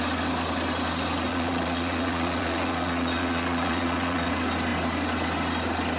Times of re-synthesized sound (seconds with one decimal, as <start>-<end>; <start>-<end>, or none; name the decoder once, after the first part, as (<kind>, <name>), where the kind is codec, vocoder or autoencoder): 1.3-4.3 (vocoder, Vocos)